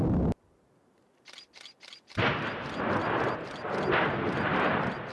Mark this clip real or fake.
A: real